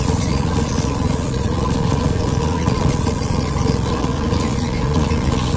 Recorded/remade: remade